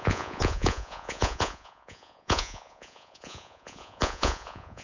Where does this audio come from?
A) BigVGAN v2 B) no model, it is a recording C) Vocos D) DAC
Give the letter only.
C